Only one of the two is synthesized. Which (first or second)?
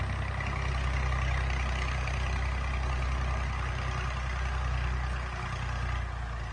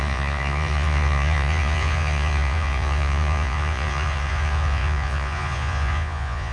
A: second